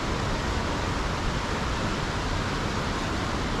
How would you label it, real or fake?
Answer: real